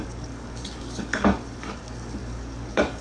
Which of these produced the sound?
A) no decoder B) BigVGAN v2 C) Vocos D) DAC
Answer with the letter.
D